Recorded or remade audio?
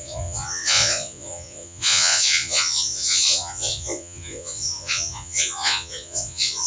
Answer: remade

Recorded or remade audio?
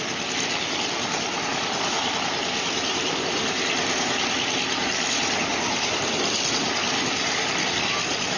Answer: remade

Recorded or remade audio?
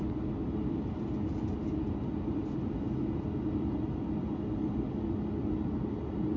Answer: recorded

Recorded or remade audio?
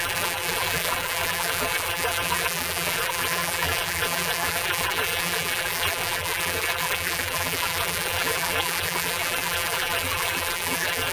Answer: remade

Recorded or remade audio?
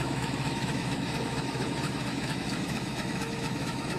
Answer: remade